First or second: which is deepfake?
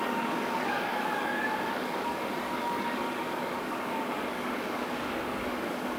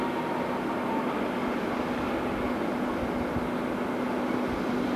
first